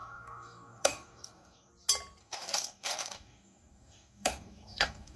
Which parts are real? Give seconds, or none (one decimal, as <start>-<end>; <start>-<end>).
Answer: 1.7-2.2